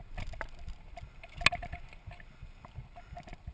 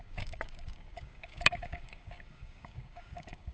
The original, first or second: first